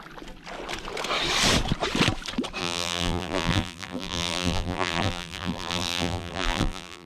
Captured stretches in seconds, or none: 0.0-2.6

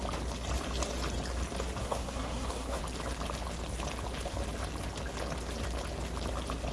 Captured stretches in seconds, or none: 0.0-1.8; 2.8-6.7

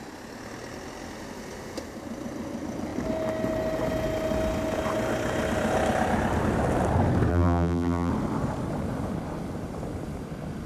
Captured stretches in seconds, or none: 0.0-7.3; 8.1-10.7

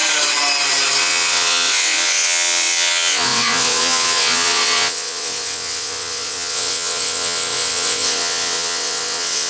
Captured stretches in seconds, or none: 0.0-1.0

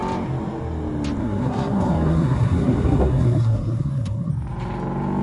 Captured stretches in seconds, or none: 0.0-1.2; 4.3-5.2